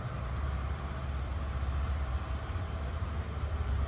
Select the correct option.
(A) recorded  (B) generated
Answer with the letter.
B